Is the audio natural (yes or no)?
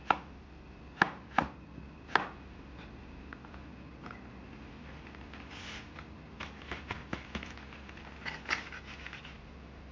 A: yes